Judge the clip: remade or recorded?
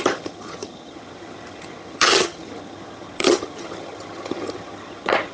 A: remade